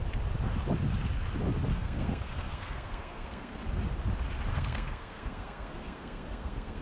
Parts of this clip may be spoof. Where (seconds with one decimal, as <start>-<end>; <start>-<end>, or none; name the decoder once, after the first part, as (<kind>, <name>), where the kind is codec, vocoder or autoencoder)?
1.7-3.6 (codec, SNAC); 4.5-6.8